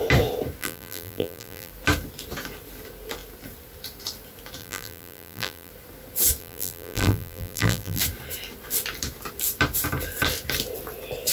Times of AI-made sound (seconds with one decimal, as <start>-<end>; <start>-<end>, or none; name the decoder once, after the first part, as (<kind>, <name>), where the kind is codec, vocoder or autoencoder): 0.6-1.7 (vocoder, BigVGAN v2); 4.6-5.7; 6.4-8.0